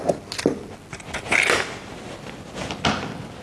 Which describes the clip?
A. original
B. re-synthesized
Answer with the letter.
A